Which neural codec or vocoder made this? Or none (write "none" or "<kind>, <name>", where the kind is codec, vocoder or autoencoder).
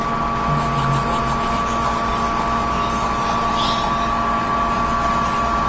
none